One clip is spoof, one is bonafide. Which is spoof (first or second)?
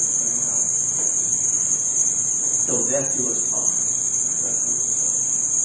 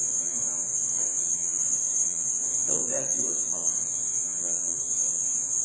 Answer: second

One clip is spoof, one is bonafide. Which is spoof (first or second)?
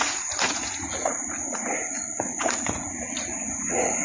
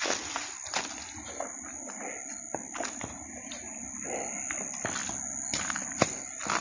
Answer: first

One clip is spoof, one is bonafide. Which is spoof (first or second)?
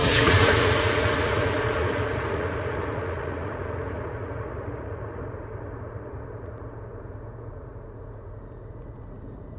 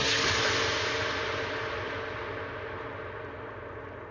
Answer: first